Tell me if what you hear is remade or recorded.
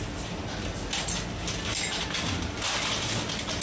recorded